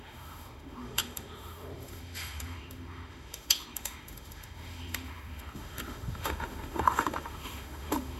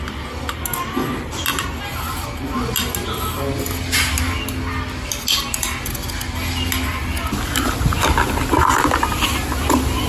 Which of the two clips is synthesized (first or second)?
first